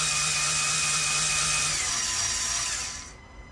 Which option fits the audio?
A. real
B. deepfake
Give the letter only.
A